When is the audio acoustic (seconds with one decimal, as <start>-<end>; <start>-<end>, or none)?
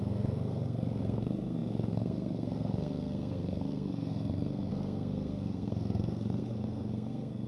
none